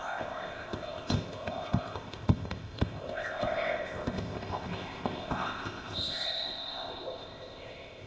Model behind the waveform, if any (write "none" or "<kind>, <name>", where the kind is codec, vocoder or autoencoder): codec, ZipCodec